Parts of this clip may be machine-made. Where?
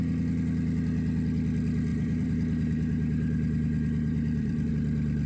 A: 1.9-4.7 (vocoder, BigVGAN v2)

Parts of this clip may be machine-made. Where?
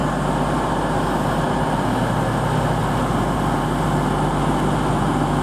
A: none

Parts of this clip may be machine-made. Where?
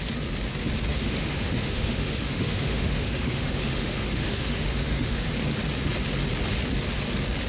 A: 0.9-5.3 (autoencoder, DAC-VAE)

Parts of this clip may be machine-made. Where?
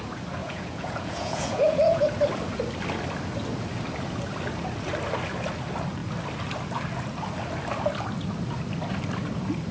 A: 0.4-2.0 (vocoder, Vocos)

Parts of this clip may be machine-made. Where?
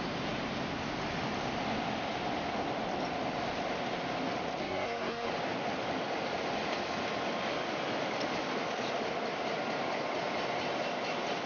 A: 4.6-5.3 (codec, SNAC)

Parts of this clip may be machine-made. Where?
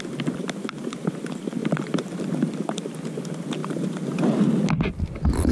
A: 3.6-4.4 (vocoder, BigVGAN v2)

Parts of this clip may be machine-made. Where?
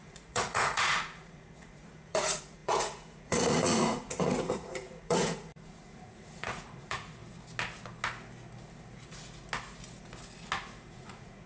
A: 0.0-7.2 (vocoder, Vocos); 10.9-11.5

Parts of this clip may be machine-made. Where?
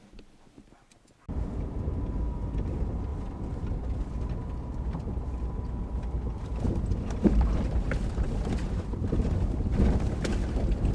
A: 6.5-9.3 (vocoder, BigVGAN v2)